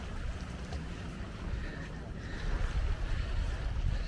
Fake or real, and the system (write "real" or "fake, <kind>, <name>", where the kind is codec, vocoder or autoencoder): real